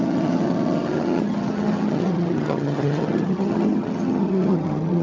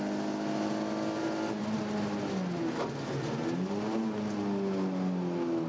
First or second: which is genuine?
second